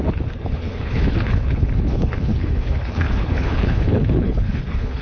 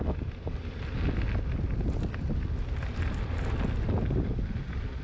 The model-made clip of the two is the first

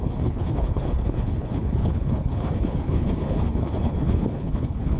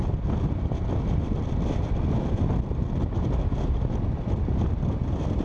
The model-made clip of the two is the first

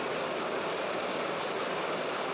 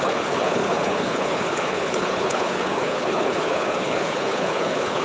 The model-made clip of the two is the second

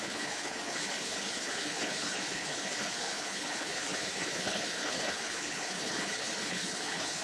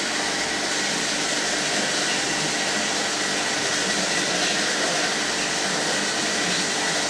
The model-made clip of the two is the first